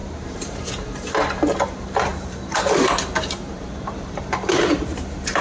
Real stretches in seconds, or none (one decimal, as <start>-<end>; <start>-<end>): 0.7-2.1